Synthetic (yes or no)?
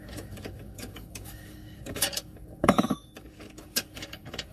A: yes